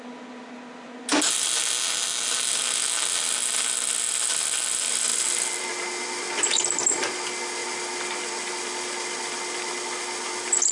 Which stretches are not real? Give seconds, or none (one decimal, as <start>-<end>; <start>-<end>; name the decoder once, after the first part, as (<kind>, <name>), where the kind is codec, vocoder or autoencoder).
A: none